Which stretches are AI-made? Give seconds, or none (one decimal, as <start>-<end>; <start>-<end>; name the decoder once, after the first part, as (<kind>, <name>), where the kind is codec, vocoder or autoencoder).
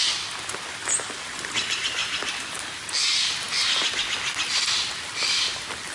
none